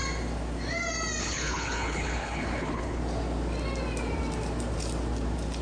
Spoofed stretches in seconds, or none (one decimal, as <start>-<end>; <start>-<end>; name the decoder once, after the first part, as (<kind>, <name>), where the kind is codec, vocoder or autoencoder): 1.2-3.0 (codec, HILCodec)